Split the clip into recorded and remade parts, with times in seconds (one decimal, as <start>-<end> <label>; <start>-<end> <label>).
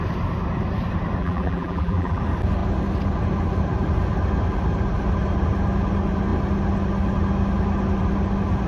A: 0.0-1.2 recorded; 1.2-2.2 remade; 2.2-8.7 recorded